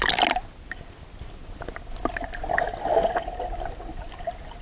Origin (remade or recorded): recorded